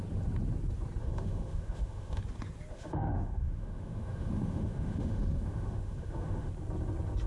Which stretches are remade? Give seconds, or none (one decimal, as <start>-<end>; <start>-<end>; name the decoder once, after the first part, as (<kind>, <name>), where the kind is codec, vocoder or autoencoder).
1.0-2.2 (autoencoder, DAC-VAE); 2.7-6.5